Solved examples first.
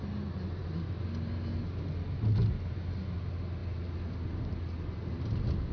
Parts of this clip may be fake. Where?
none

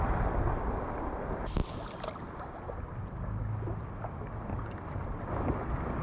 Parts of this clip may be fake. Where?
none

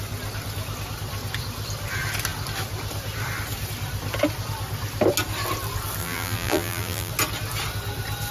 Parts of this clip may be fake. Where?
6.0-7.1